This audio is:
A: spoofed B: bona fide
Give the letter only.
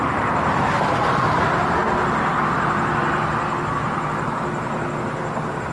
B